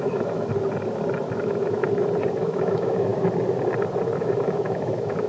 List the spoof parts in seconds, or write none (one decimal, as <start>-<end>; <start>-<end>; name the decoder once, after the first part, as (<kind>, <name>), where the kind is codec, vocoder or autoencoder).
0.0-0.5 (autoencoder, DAC-VAE); 1.4-1.8; 2.3-3.1; 4.2-5.3

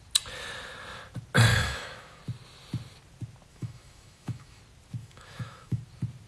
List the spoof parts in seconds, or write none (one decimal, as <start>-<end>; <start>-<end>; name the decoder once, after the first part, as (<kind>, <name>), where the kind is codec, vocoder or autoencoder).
1.5-2.2 (autoencoder, DAC-VAE); 3.5-4.6; 5.0-5.8

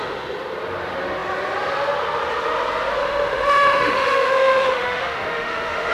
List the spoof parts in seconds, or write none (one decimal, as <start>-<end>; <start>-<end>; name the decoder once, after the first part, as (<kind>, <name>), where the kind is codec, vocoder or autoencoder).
3.0-5.9 (autoencoder, DAC-VAE)

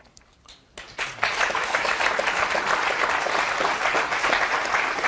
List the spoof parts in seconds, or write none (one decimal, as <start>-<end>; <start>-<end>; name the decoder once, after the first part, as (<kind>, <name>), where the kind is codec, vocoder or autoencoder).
1.4-2.0 (autoencoder, DAC-VAE)

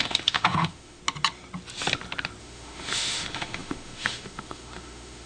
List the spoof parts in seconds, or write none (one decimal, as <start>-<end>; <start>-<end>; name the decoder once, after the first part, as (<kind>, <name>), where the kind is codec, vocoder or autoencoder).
0.0-1.0 (autoencoder, DAC-VAE); 2.4-5.3

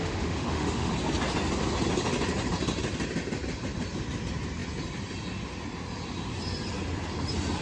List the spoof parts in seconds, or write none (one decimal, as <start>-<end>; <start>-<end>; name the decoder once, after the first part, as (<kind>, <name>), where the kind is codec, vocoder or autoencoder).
0.0-0.9 (autoencoder, DAC-VAE)

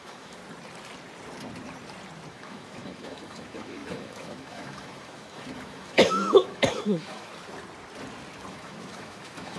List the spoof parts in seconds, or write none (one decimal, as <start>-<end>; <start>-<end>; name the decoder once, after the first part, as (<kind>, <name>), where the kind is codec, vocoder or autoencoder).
0.0-0.4 (autoencoder, DAC-VAE); 2.3-7.3; 8.5-9.6